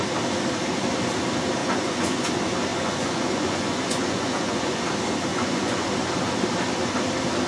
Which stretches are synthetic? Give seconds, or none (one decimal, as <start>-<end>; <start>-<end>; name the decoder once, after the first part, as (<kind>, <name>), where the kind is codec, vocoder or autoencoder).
1.6-2.3 (vocoder, Vocos); 2.7-4.8; 5.3-5.9